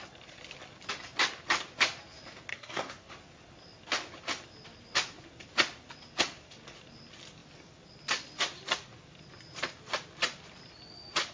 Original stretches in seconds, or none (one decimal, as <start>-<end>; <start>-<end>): 0.0-2.5; 3.1-11.3